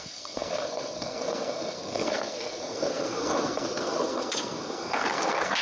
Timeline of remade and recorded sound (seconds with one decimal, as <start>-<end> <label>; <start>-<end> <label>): 0.0-5.6 remade